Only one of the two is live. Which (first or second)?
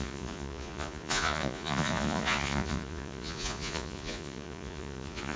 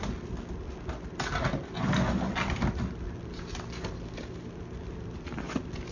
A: second